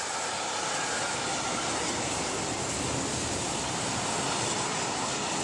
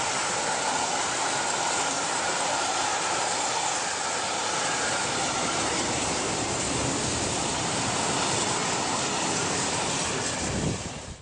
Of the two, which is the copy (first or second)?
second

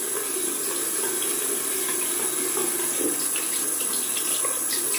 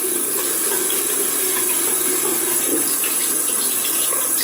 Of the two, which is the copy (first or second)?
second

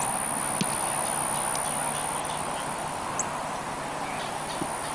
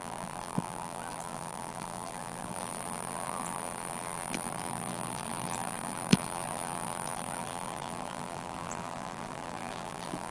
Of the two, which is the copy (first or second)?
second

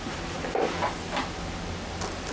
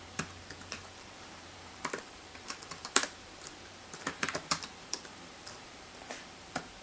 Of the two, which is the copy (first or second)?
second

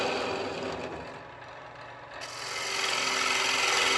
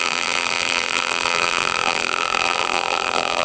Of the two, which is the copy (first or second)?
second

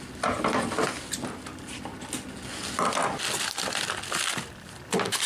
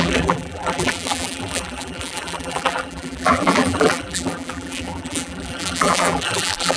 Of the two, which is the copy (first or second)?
second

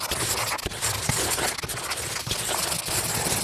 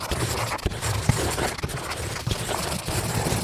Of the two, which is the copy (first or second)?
second